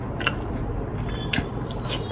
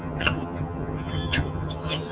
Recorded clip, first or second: first